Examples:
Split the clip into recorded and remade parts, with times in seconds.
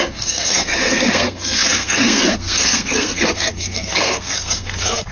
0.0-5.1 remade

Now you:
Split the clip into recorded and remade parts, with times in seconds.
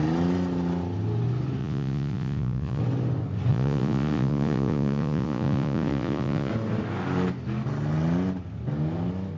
0.0-1.6 recorded; 1.6-2.8 remade; 2.8-3.5 recorded; 3.5-6.5 remade; 6.5-9.4 recorded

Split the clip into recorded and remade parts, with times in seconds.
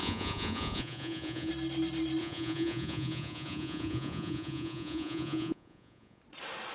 0.0-1.5 remade; 1.5-2.2 recorded; 2.2-6.2 remade; 6.2-6.7 recorded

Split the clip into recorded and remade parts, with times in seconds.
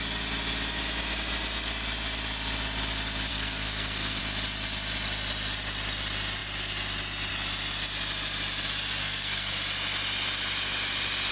0.0-3.3 recorded; 3.3-4.2 remade; 4.2-9.0 recorded; 9.0-9.5 remade; 9.5-11.3 recorded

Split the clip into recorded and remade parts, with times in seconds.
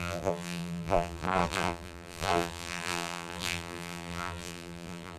0.0-5.2 remade